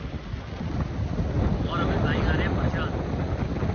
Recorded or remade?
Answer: recorded